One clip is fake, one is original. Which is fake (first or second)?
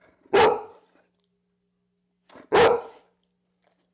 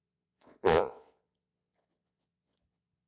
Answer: second